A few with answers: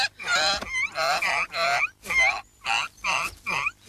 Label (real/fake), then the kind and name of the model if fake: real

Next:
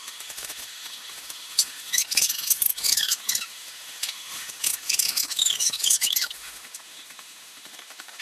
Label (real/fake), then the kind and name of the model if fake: fake, autoencoder, DAC-VAE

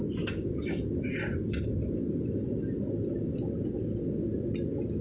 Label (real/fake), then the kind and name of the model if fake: real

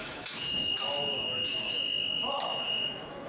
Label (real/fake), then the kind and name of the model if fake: fake, autoencoder, DAC-VAE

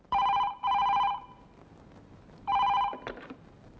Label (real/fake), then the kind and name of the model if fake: fake, vocoder, BigVGAN v2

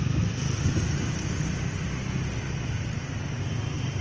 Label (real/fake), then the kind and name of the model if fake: real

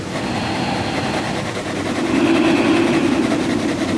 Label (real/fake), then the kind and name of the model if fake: real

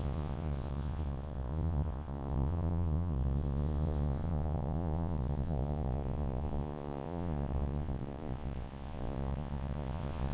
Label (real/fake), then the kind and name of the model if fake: fake, vocoder, Vocos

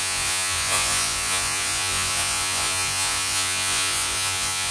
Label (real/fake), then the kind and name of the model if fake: fake, vocoder, Vocos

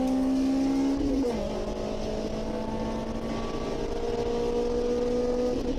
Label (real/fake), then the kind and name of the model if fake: real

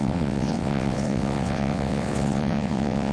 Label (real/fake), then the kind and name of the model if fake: fake, vocoder, WaveNeXt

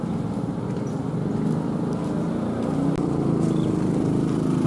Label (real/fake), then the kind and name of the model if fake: real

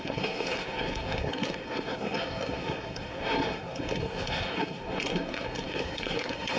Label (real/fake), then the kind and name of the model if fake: fake, codec, SNAC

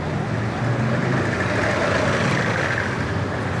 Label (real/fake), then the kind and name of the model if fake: real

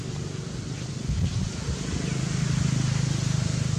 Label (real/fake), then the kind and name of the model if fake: real